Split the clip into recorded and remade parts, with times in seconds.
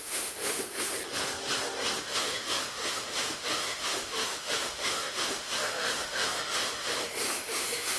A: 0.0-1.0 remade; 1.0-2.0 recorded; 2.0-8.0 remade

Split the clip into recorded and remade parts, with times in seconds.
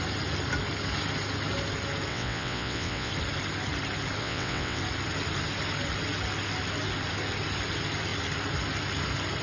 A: 0.0-2.1 recorded; 2.1-3.1 remade; 3.1-4.2 recorded; 4.2-4.8 remade; 4.8-9.4 recorded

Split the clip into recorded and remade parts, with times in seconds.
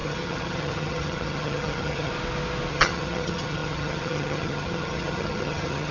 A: 0.0-2.1 remade; 2.1-2.7 recorded; 2.7-5.9 remade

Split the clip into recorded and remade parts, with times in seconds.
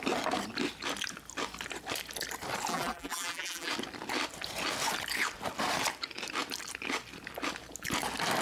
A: 0.0-2.7 recorded; 2.7-3.7 remade; 3.7-8.4 recorded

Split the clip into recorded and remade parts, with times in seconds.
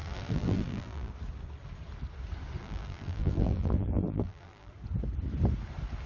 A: 0.0-1.1 remade; 1.1-2.6 recorded; 2.6-4.7 remade; 4.7-6.1 recorded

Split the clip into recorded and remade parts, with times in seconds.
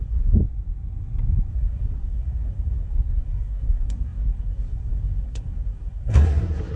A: 0.0-0.4 remade; 0.4-1.5 recorded; 1.5-6.8 remade